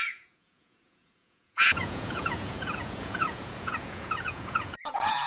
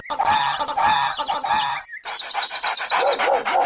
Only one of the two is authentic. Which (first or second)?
second